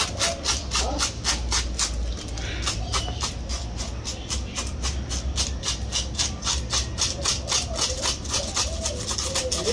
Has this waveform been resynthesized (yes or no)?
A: no